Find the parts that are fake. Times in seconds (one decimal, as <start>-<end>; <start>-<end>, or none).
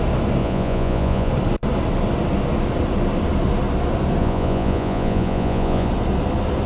0.4-1.3; 4.2-5.9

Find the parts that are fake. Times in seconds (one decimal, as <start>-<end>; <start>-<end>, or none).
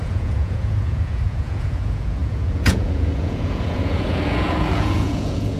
0.0-5.6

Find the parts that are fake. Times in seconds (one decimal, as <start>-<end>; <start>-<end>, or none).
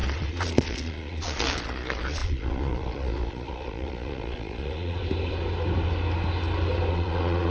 0.0-5.0; 6.9-7.5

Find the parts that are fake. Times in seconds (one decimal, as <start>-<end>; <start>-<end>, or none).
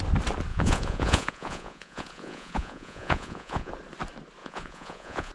0.5-3.7; 4.4-5.3